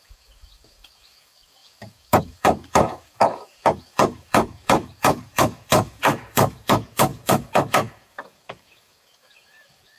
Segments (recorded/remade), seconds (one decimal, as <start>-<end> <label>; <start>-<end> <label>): 0.0-10.0 remade